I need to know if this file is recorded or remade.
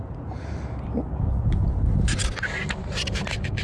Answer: recorded